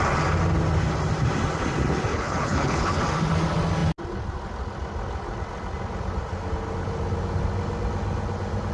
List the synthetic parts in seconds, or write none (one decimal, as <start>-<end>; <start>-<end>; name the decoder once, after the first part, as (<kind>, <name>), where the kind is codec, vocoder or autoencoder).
2.1-3.0 (codec, HILCodec)